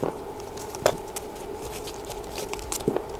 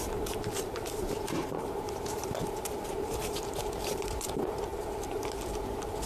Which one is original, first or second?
first